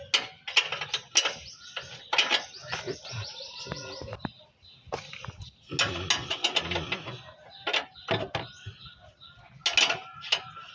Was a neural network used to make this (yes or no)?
no